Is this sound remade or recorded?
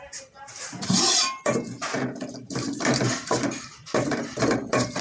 remade